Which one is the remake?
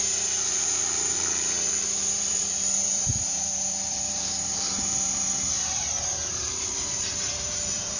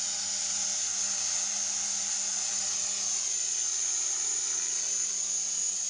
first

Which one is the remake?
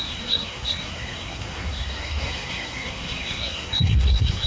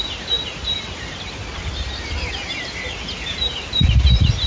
first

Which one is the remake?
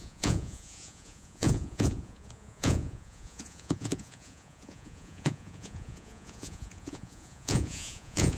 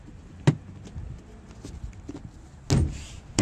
first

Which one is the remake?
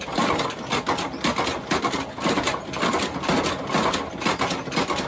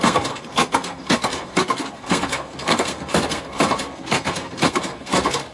second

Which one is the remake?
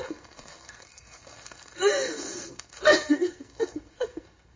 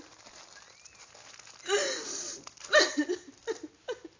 first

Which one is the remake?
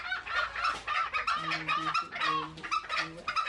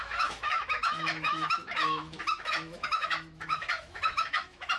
second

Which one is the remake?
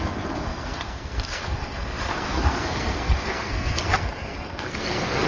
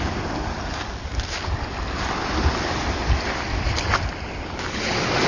first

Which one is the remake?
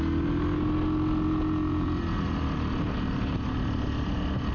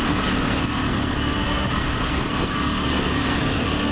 second